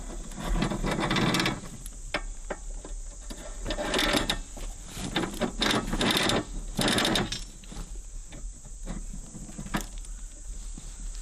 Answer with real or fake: real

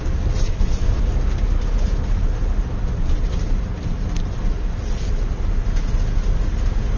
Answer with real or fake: real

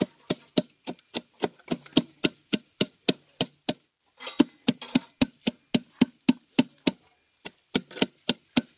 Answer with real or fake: real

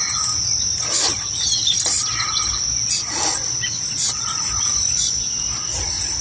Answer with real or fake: real